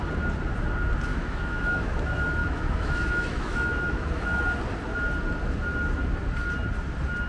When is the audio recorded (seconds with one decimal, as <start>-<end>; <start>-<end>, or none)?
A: 0.0-1.1; 1.9-2.4; 4.4-7.3